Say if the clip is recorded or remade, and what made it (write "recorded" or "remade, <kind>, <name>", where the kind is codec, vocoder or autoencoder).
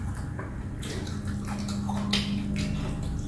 recorded